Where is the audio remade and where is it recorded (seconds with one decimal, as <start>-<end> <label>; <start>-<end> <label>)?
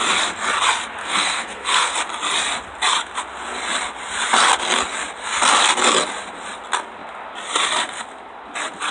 0.0-1.0 recorded; 1.0-1.9 remade; 1.9-8.9 recorded